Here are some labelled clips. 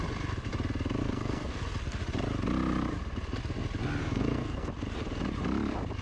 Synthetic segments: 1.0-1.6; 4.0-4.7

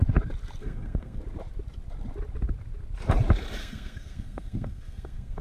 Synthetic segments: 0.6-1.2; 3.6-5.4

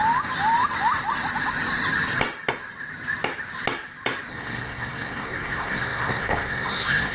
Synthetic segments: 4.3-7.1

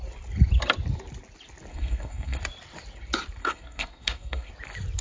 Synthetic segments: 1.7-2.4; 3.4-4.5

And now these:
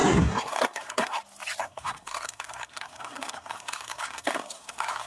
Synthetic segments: 0.0-1.2; 1.6-5.1

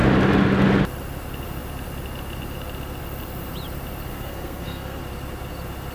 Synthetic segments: 4.1-5.0

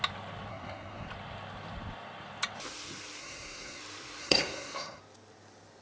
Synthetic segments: 0.5-1.1; 3.2-3.8; 4.2-5.0